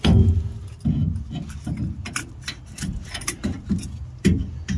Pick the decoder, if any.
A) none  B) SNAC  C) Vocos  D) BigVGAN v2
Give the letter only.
A